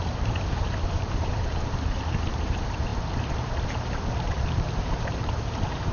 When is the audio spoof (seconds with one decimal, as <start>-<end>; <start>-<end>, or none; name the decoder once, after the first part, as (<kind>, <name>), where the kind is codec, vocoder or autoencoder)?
0.0-2.9 (vocoder, BigVGAN v2); 3.7-5.9